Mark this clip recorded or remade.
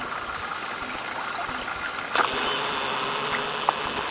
recorded